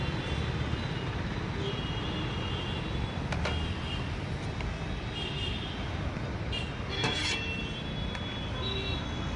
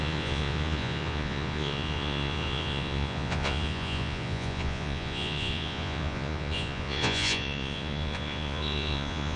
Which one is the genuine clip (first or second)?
first